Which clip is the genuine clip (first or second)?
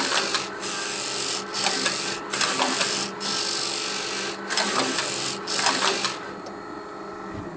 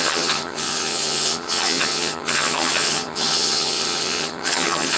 first